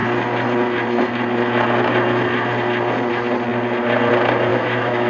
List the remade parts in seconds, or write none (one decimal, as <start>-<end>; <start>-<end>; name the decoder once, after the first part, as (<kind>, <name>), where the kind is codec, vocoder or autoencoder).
4.5-5.1 (autoencoder, DAC-VAE)